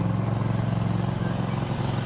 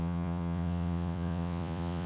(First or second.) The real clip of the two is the first